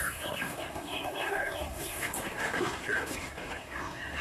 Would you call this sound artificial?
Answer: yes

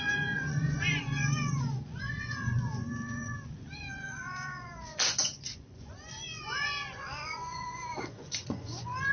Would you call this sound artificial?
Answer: yes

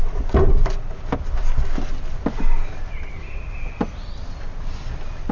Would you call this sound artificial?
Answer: no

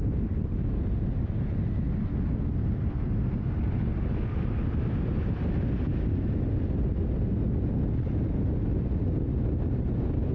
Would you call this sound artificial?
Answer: no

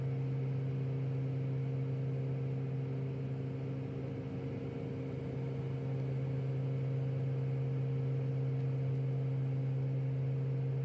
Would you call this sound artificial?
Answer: no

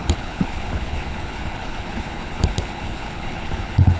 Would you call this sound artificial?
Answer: yes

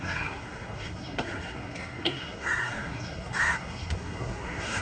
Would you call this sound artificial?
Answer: yes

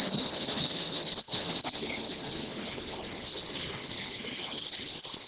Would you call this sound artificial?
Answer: yes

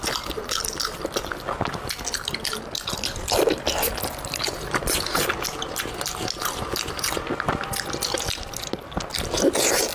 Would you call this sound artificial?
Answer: no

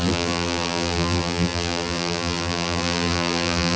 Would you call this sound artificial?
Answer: yes